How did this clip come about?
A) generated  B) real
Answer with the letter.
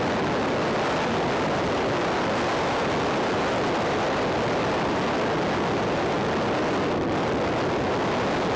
B